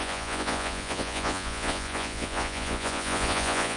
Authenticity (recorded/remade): remade